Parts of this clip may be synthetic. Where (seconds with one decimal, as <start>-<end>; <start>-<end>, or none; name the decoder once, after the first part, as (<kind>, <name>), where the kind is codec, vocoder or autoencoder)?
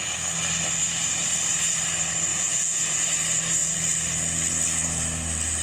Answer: 2.3-3.0 (vocoder, Vocos)